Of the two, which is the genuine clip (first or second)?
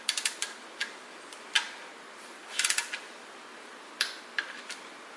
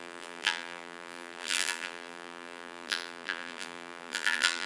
first